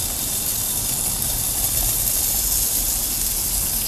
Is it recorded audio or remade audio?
recorded